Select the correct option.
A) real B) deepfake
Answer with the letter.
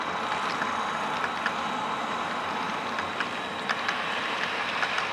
A